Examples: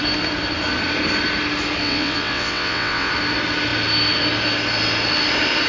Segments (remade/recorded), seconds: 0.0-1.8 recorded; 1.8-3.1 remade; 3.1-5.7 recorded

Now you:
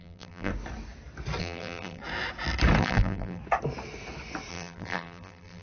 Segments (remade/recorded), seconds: 0.0-0.5 remade; 0.5-1.4 recorded; 1.4-2.0 remade; 2.0-2.8 recorded; 2.8-3.4 remade; 3.4-4.5 recorded; 4.5-5.6 remade